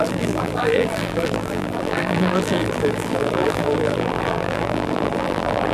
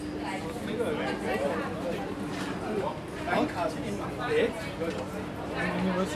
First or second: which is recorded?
second